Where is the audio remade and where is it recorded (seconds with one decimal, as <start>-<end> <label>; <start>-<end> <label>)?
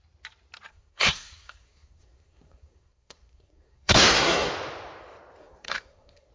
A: 0.0-0.7 recorded; 0.7-4.5 remade; 4.5-5.4 recorded; 5.4-6.3 remade